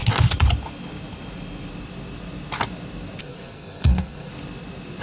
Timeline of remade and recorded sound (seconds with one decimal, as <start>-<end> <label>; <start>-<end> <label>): 0.0-3.2 recorded; 3.2-4.3 remade; 4.3-5.0 recorded